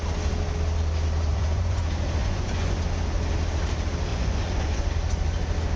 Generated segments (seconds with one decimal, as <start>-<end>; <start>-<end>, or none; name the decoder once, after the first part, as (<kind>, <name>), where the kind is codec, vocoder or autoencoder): 1.3-1.8 (vocoder, Vocos); 2.2-2.8; 4.1-4.9